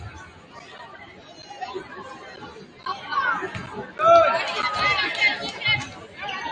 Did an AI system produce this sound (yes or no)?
no